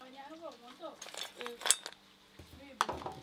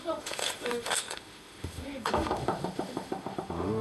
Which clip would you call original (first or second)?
first